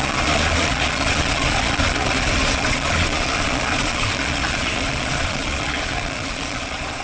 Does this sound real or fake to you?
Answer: fake